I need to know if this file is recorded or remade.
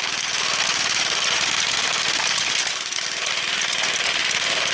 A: recorded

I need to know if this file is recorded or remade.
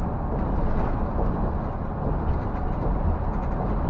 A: recorded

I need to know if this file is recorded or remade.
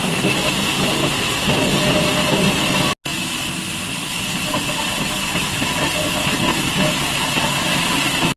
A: recorded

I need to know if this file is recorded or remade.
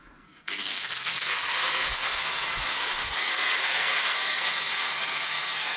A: remade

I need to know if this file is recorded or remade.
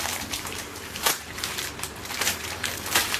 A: remade